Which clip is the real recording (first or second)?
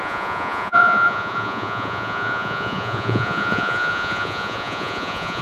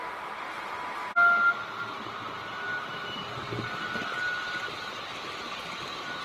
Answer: second